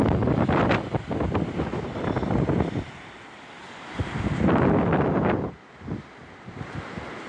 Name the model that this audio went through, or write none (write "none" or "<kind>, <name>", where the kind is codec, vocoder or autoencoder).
none